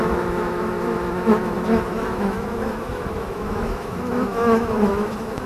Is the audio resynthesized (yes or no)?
yes